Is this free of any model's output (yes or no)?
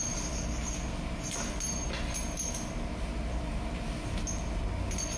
yes